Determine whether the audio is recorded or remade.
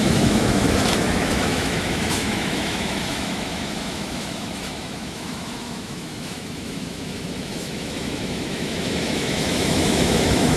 remade